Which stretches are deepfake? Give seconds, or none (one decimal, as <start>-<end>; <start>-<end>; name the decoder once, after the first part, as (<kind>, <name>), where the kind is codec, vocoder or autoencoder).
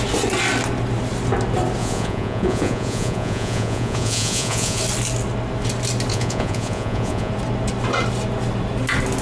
1.8-4.8 (vocoder, Vocos); 6.1-7.3